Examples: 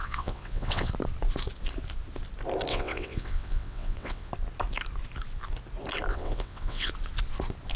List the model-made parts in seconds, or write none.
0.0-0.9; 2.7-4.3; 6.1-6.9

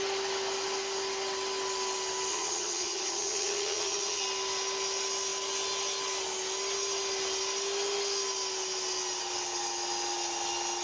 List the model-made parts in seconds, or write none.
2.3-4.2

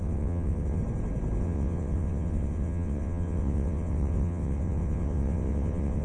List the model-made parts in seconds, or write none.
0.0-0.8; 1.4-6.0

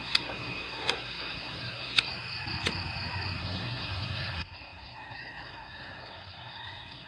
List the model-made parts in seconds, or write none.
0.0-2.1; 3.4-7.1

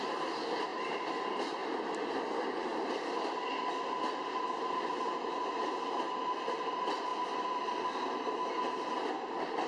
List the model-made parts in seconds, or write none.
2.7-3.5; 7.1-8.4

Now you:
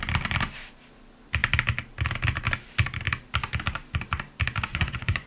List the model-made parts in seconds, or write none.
4.7-5.3